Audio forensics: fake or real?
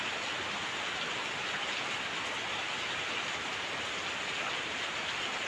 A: real